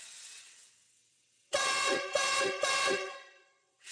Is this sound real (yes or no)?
no